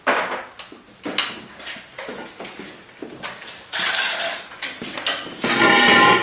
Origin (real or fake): real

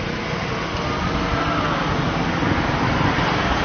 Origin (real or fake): real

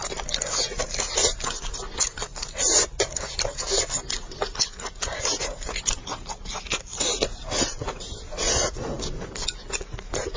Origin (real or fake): real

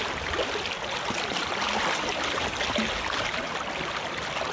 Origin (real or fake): real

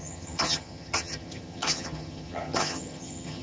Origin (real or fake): fake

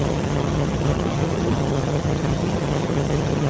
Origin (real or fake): fake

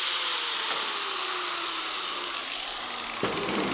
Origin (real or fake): real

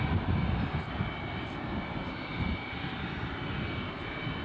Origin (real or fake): real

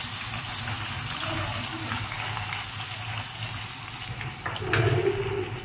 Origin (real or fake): real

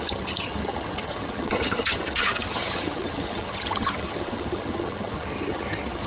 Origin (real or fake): fake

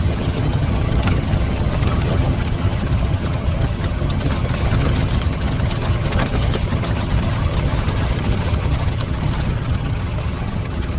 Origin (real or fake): fake